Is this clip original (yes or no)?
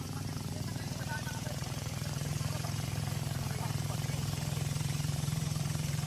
no